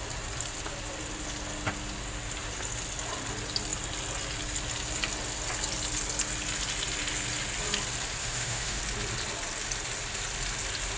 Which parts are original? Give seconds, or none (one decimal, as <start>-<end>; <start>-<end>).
0.0-8.2; 8.8-11.0